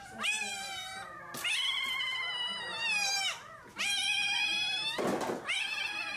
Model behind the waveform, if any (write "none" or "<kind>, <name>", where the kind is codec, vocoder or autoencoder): none